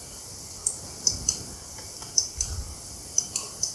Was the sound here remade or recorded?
remade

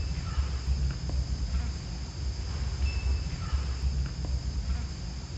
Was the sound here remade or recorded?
recorded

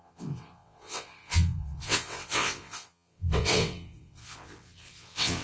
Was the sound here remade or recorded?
remade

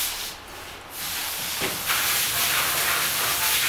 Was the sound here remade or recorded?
remade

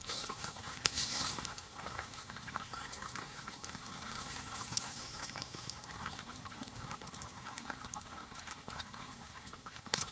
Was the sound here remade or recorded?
remade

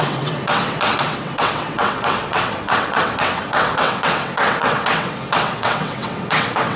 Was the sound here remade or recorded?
remade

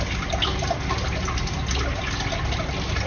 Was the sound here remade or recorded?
recorded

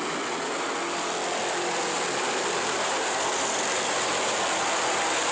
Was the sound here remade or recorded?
recorded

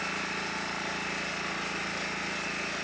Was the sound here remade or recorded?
recorded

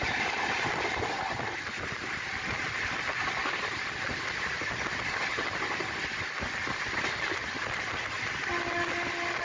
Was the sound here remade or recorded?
recorded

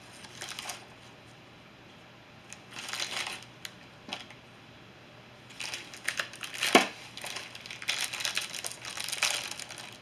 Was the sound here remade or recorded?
recorded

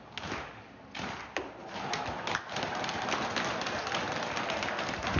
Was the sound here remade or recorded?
recorded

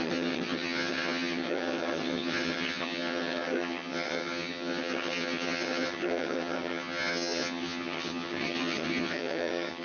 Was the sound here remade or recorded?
remade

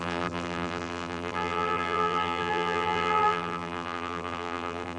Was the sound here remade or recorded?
remade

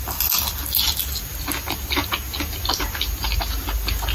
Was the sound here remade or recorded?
recorded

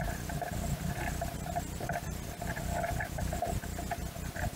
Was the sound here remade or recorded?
recorded